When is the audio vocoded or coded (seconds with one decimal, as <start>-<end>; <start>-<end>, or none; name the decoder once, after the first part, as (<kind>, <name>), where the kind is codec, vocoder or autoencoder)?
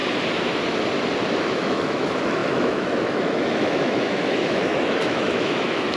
1.3-6.0 (autoencoder, DAC-VAE)